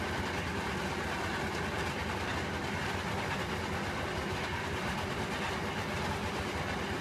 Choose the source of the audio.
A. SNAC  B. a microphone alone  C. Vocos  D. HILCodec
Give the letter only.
B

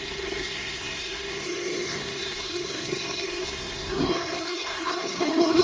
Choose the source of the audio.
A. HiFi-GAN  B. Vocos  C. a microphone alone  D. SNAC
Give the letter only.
D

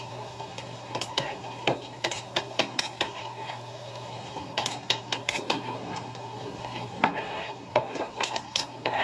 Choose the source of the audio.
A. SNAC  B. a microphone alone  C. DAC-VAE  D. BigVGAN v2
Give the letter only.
A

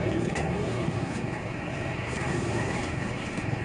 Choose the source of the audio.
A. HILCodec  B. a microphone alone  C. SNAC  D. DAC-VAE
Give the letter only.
C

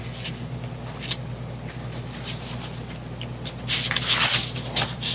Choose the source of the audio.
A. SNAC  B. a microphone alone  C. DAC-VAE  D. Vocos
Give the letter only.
B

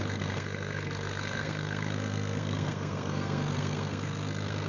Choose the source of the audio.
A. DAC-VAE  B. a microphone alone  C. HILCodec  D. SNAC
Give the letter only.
D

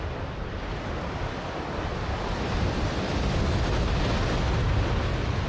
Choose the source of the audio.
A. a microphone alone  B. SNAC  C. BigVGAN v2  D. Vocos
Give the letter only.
A